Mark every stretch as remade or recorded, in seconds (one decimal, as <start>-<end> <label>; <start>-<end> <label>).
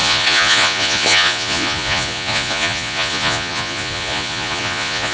0.0-5.1 remade